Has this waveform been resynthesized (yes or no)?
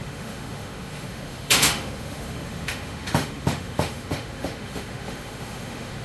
yes